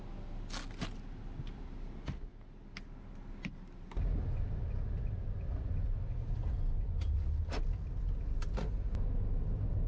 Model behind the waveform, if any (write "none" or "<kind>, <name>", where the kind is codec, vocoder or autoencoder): none